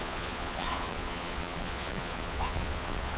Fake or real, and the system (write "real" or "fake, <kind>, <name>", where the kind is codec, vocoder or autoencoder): fake, vocoder, Vocos